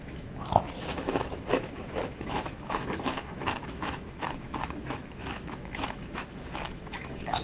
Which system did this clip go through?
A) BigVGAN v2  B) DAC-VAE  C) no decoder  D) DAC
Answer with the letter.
B